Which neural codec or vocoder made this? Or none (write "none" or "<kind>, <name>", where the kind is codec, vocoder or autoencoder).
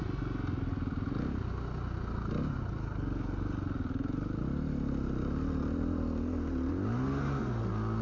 none